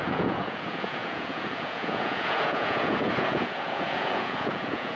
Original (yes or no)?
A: no